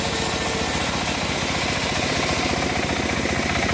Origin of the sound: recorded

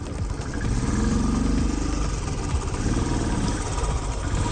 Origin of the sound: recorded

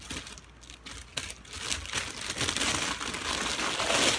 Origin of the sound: recorded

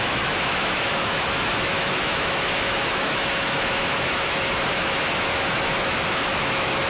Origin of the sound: remade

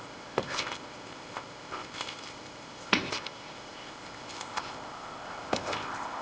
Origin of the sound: remade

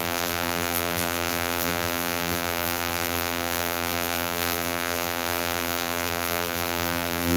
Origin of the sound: remade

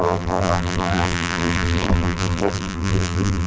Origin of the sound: remade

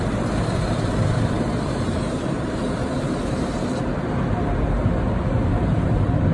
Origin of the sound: remade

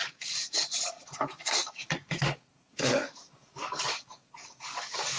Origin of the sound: remade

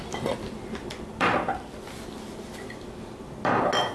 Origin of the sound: recorded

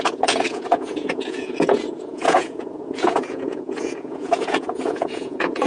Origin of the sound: remade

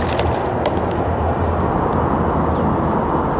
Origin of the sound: recorded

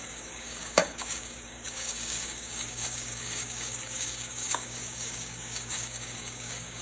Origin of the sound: remade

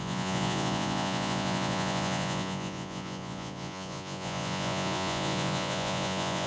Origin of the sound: remade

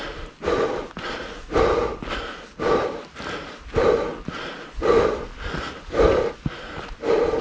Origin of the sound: recorded